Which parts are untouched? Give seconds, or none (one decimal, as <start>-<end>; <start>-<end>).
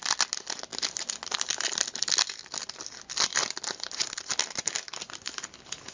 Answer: 0.0-5.9